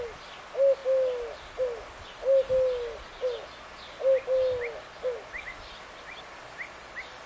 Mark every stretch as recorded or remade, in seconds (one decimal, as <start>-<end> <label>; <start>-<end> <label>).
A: 0.0-7.3 recorded